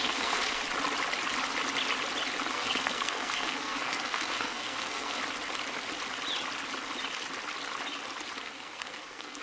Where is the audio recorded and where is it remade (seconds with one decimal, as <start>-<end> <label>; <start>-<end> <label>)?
0.0-0.6 remade; 0.6-2.5 recorded; 2.5-5.2 remade; 5.2-8.4 recorded; 8.4-9.4 remade